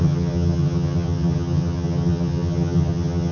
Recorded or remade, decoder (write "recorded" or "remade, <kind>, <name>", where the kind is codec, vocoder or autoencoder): remade, vocoder, HiFi-GAN